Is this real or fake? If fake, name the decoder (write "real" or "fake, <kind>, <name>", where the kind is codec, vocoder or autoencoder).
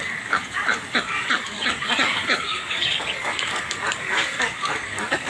fake, codec, DAC